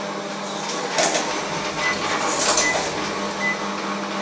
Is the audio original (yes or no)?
yes